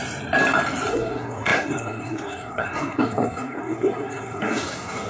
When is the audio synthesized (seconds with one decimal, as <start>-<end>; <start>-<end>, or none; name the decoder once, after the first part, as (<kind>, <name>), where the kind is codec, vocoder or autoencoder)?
0.9-5.1 (codec, SNAC)